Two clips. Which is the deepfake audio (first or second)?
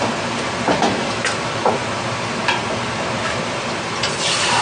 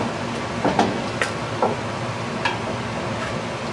first